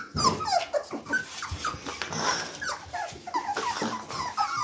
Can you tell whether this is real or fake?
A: real